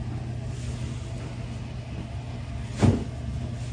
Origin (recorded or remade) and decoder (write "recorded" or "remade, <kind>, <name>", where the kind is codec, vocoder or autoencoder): recorded